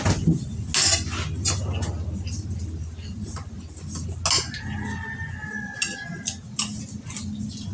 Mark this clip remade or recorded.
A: recorded